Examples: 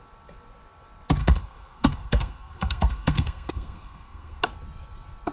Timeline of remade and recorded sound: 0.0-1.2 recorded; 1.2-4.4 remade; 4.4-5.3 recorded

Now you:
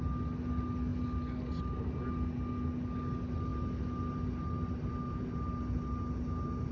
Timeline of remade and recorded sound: 0.0-6.7 recorded

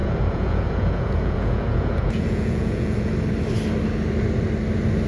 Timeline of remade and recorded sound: 0.0-3.1 remade; 3.1-5.1 recorded

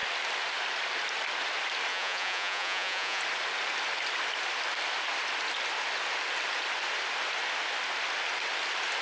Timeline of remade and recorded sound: 0.0-1.9 recorded; 1.9-3.2 remade; 3.2-9.0 recorded

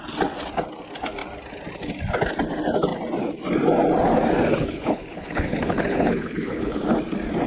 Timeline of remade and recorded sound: 0.0-4.5 recorded; 4.5-6.8 remade; 6.8-7.5 recorded

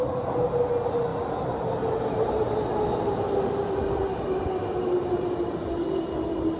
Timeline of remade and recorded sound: 0.0-6.6 recorded

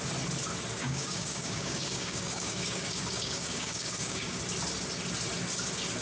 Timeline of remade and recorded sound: 0.0-0.8 recorded; 0.8-4.4 remade; 4.4-6.0 recorded

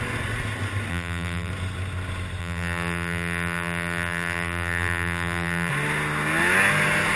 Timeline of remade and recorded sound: 0.0-0.9 recorded; 0.9-1.5 remade; 1.5-2.4 recorded; 2.4-5.7 remade; 5.7-7.2 recorded